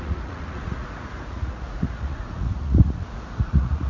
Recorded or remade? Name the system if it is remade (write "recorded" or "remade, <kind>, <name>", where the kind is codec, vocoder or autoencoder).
remade, vocoder, Vocos